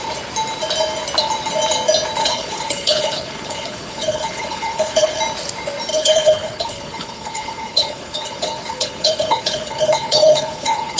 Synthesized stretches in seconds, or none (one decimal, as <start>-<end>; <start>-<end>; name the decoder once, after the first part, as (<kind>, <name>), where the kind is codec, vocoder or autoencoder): 2.2-5.2 (codec, HILCodec); 5.9-11.0